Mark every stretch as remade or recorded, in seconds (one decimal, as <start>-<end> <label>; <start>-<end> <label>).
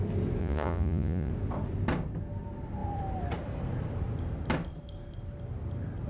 0.0-0.4 recorded; 0.4-1.3 remade; 1.3-6.1 recorded